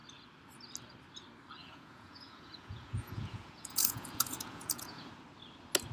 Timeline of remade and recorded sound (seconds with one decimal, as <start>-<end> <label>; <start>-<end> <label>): 0.0-1.6 recorded; 1.6-5.1 remade; 5.1-5.9 recorded